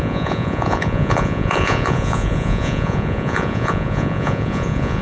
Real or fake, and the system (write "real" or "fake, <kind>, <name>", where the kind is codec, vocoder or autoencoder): fake, vocoder, Vocos